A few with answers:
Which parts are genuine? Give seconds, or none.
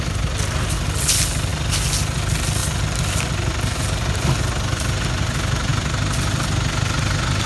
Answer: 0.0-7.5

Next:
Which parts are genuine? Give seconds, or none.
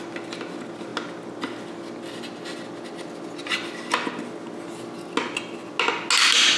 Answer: 0.0-6.6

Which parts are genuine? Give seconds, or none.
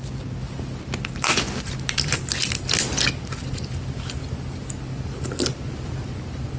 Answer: 0.0-6.6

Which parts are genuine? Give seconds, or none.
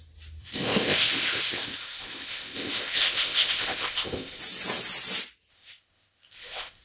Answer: 0.0-0.4; 4.4-5.5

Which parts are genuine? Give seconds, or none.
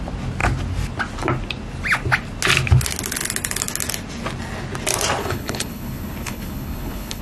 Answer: 0.0-5.2